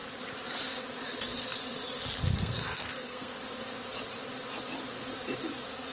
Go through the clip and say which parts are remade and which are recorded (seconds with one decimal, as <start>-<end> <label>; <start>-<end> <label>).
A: 0.0-2.3 recorded; 2.3-3.4 remade; 3.4-5.9 recorded